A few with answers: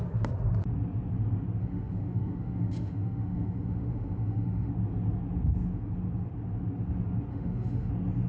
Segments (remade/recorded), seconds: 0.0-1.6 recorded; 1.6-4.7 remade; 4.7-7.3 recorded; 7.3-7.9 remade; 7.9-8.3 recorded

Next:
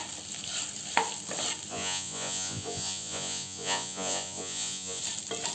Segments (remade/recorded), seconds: 0.0-1.7 recorded; 1.7-5.0 remade; 5.0-5.5 recorded

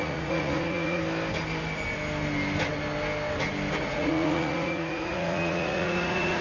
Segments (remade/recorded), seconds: 0.0-1.0 remade; 1.0-3.8 recorded; 3.8-6.4 remade

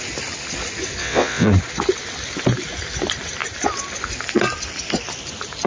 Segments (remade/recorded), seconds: 0.0-1.0 recorded; 1.0-1.5 remade; 1.5-5.7 recorded